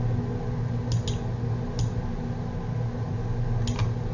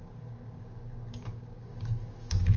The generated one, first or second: second